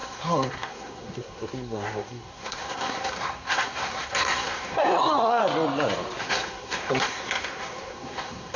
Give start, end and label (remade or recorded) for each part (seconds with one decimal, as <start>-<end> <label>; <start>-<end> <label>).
0.0-5.4 remade; 5.4-6.2 recorded; 6.2-8.6 remade